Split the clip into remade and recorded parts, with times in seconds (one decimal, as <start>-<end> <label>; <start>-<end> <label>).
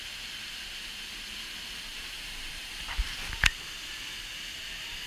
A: 0.0-1.9 recorded; 1.9-2.9 remade; 2.9-5.1 recorded